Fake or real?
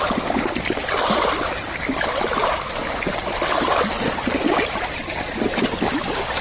real